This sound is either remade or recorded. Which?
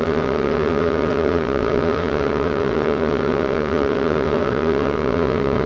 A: remade